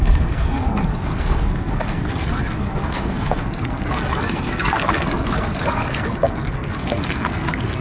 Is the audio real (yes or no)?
no